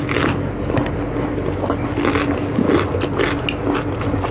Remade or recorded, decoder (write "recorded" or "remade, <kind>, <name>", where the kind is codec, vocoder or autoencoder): recorded